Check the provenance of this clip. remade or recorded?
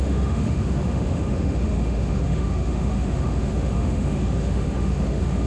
remade